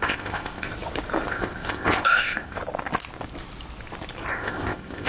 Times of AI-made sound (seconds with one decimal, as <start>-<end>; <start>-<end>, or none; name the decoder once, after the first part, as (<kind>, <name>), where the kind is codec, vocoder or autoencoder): 0.0-0.7 (codec, ZipCodec); 1.3-2.6; 4.3-5.1

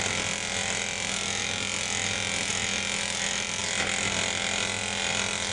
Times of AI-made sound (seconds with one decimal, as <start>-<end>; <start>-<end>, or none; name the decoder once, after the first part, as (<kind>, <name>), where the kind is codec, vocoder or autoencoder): none

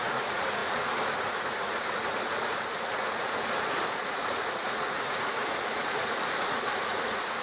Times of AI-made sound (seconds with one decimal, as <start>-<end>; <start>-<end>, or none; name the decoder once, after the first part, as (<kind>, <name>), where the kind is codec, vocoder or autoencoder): 0.0-7.4 (vocoder, Vocos)

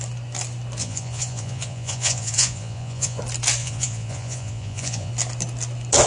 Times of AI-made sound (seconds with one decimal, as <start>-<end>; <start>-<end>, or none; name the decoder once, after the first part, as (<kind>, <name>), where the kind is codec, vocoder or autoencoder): 0.8-3.2 (vocoder, Vocos); 3.6-5.1

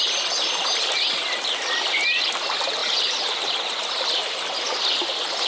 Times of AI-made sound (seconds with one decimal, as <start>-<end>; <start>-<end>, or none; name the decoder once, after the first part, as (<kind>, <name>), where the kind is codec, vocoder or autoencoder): none

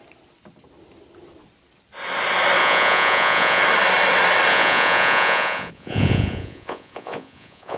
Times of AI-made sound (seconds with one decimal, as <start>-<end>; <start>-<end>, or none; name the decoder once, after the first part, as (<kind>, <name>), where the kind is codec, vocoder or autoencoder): 2.6-3.6 (vocoder, Vocos); 4.5-7.8

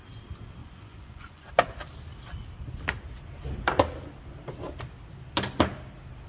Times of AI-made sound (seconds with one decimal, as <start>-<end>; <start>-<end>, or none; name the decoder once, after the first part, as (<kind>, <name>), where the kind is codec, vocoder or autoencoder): 0.6-1.5 (vocoder, Vocos)

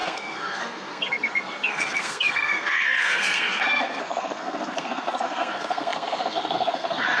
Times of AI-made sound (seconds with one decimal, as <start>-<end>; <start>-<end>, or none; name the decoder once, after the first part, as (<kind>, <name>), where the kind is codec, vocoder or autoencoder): 0.0-7.2 (codec, SNAC)